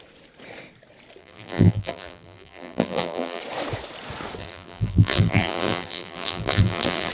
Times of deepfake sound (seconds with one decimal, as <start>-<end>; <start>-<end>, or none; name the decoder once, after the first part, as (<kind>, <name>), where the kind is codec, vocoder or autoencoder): 1.2-3.4 (vocoder, BigVGAN v2); 4.4-7.1